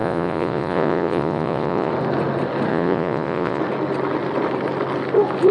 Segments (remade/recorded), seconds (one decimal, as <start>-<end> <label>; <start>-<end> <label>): 0.0-1.9 remade; 1.9-2.7 recorded; 2.7-3.6 remade; 3.6-5.5 recorded

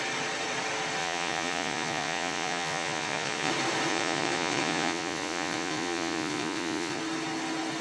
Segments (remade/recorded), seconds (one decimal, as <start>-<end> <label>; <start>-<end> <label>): 0.0-1.0 recorded; 1.0-3.5 remade; 3.5-3.9 recorded; 3.9-7.0 remade; 7.0-7.8 recorded

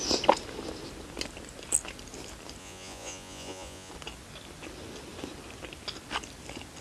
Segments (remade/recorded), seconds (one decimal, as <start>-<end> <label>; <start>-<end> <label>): 0.0-2.6 recorded; 2.6-3.9 remade; 3.9-6.8 recorded

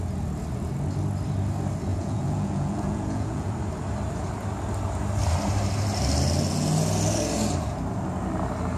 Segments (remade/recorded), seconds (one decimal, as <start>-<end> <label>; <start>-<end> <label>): 0.0-1.9 recorded; 1.9-3.5 remade; 3.5-8.8 recorded

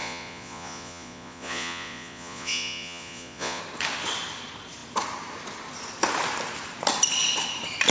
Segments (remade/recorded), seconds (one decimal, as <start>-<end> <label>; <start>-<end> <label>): 0.0-3.6 remade; 3.6-7.9 recorded

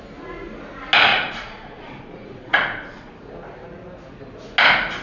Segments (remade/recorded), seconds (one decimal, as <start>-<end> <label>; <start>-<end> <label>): 0.0-1.1 recorded; 1.1-3.1 remade; 3.1-5.0 recorded